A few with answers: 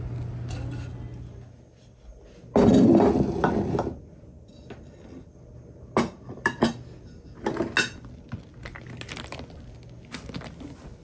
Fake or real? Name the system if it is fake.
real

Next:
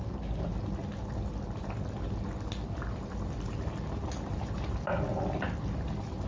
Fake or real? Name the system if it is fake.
real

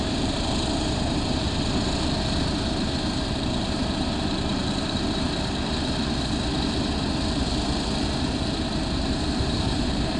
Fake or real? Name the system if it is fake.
fake, vocoder, BigVGAN v2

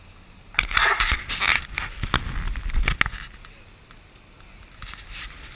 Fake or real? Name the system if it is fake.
real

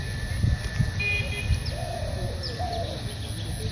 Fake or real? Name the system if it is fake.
real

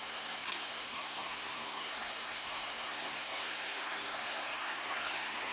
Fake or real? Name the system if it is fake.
fake, codec, SNAC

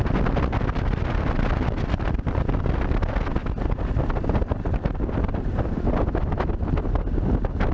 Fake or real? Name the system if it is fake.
real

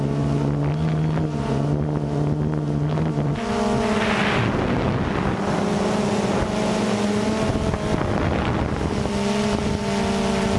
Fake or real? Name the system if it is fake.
real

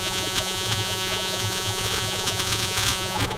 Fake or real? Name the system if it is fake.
fake, vocoder, Vocos